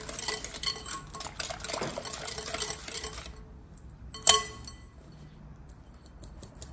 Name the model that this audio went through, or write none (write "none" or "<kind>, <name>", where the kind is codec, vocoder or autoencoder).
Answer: none